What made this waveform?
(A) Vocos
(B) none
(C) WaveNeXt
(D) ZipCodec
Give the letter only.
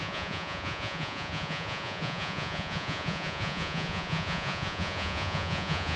A